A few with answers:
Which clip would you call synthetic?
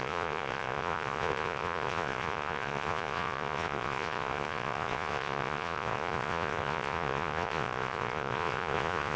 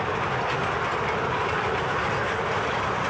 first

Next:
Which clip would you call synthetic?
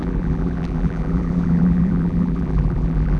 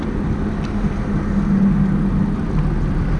first